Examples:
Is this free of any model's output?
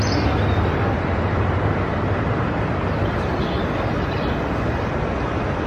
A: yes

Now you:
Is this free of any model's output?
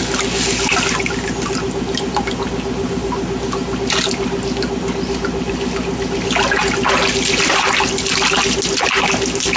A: yes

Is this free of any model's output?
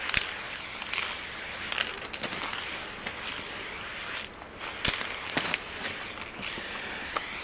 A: yes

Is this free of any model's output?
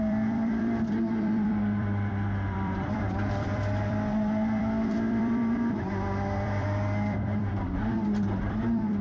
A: no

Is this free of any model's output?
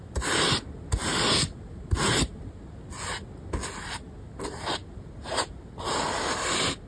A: yes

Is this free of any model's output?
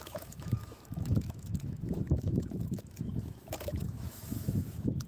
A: no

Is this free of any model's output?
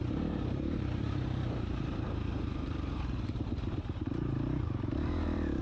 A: no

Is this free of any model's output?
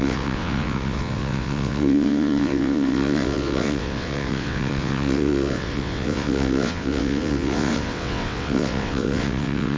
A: no